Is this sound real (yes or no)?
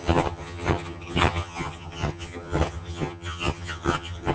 no